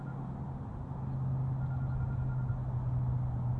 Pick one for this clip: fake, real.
real